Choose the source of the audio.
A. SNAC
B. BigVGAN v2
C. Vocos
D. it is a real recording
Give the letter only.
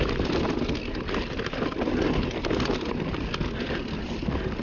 D